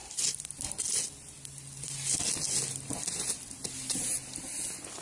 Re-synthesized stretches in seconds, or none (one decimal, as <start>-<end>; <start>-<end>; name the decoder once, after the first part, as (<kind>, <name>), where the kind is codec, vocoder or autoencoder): none